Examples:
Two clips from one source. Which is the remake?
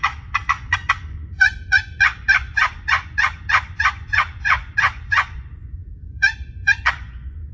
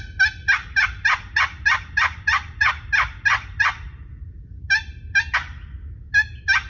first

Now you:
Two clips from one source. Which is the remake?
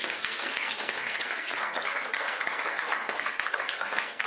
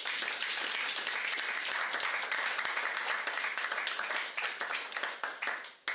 first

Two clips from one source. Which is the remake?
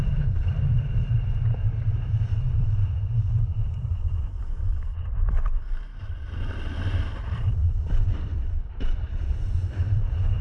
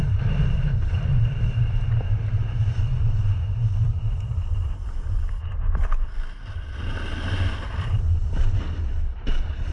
first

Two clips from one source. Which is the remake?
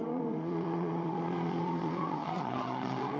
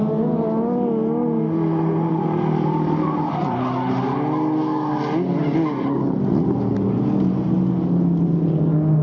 first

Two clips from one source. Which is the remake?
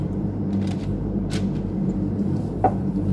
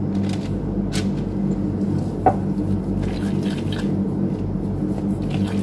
first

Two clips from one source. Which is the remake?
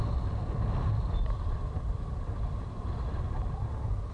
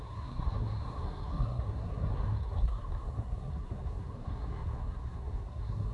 second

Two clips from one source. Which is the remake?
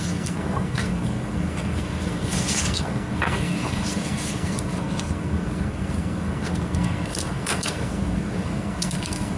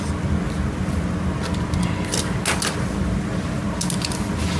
first